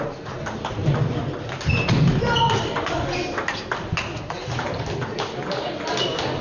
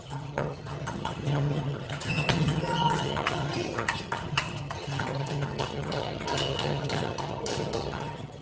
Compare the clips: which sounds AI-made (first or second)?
second